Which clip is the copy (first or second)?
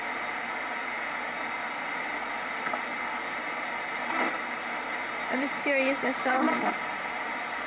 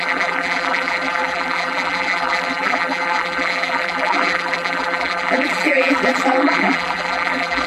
second